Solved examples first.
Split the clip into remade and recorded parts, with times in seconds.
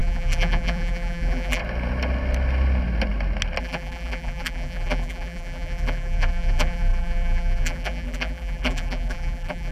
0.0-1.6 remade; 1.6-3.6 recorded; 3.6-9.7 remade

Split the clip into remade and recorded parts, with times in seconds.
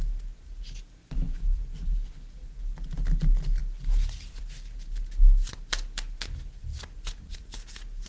0.0-1.0 recorded; 1.0-2.6 remade; 2.6-8.1 recorded